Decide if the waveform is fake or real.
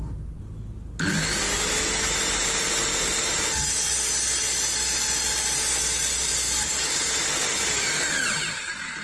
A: real